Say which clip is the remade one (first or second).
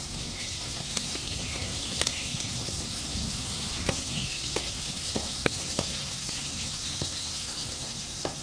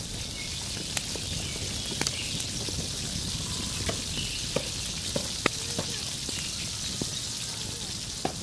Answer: first